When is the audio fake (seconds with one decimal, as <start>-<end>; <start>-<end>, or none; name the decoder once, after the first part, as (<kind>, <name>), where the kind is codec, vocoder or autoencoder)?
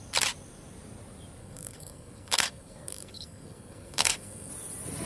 1.4-4.5 (codec, SNAC)